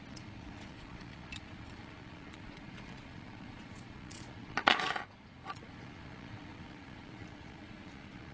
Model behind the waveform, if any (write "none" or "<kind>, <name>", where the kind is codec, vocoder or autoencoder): vocoder, Vocos